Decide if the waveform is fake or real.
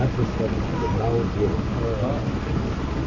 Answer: real